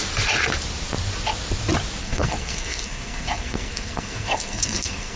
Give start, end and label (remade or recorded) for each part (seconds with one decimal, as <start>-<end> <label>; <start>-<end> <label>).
0.0-2.0 recorded; 2.0-5.2 remade